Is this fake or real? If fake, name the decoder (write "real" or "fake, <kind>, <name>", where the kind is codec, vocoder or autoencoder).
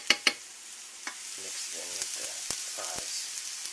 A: real